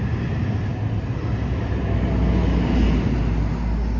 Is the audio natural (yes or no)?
yes